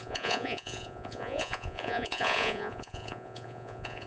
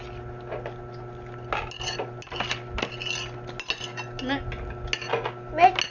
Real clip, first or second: second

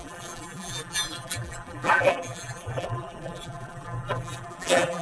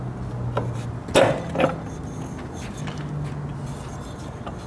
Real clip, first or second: second